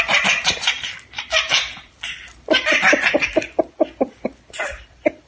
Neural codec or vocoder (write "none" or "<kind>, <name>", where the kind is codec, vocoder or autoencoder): vocoder, BigVGAN v2